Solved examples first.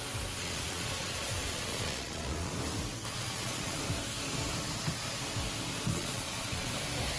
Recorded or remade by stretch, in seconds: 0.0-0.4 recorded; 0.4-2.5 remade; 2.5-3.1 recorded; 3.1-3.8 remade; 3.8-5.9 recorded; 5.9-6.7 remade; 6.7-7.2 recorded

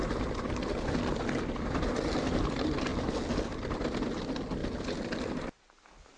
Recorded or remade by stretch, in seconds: 0.0-6.2 recorded

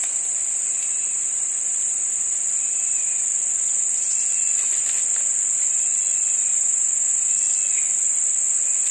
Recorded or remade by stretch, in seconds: 0.0-6.5 recorded; 6.5-7.1 remade; 7.1-8.9 recorded